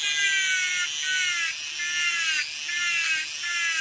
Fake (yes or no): no